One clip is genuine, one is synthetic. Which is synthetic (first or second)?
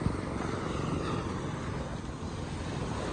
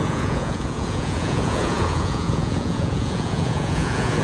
second